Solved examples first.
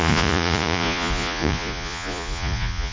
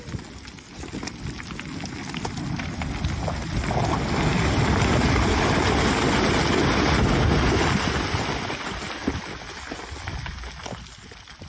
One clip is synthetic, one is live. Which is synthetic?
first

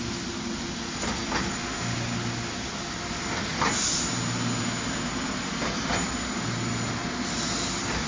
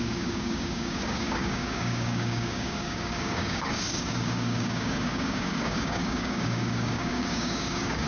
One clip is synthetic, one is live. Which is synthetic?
second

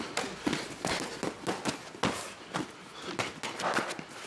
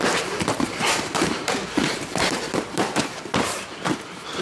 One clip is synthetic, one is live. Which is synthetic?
second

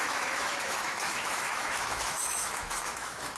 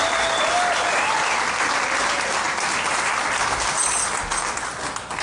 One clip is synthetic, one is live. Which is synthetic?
first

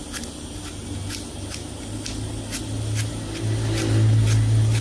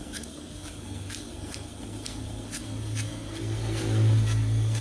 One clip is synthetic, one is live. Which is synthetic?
second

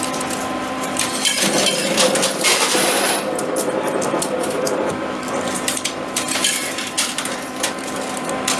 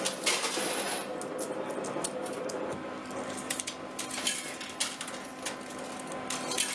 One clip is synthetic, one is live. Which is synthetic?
first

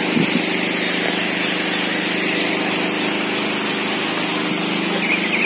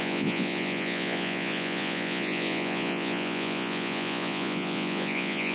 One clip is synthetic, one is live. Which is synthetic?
second